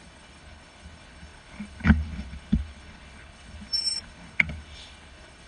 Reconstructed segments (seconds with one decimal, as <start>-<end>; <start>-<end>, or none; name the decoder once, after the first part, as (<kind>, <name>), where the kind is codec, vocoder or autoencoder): 0.0-5.5 (codec, HILCodec)

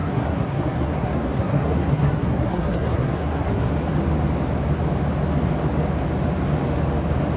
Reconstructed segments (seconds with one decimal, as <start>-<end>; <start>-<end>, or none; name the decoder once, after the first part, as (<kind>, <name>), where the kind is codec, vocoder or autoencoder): 0.0-3.7 (codec, SNAC)

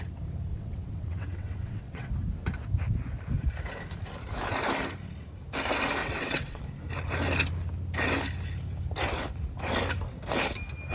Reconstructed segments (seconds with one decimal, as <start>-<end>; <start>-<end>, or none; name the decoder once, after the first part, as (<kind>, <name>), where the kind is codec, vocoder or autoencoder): 0.5-2.1 (vocoder, WaveNeXt); 6.0-6.6

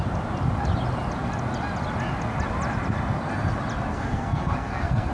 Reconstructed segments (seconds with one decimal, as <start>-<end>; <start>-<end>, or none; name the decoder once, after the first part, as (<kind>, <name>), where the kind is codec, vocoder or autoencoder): 3.9-5.1 (codec, SNAC)

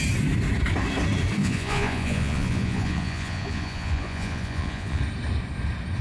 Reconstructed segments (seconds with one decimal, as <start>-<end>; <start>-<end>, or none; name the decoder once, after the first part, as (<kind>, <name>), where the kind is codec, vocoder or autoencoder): 1.4-5.0 (vocoder, Vocos)

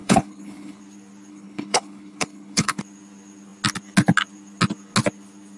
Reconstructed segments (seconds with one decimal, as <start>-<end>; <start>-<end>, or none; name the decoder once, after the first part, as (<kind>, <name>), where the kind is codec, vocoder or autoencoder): 0.0-0.8 (codec, HILCodec); 1.3-2.8